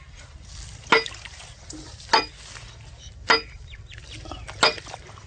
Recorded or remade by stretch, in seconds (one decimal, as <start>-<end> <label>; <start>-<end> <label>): 0.0-5.3 recorded